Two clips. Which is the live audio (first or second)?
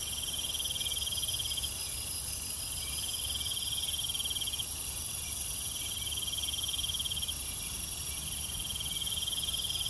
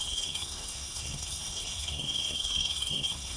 first